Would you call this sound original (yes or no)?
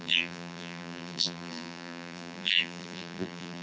no